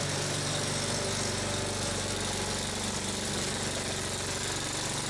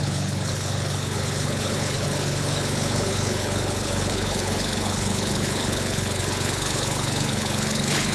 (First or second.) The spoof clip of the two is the second